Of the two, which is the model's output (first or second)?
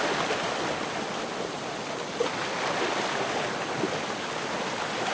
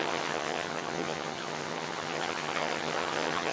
second